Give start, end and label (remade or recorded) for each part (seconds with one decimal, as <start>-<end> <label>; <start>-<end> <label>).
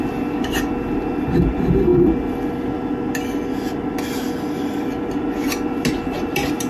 0.0-1.9 remade; 1.9-5.9 recorded; 5.9-6.7 remade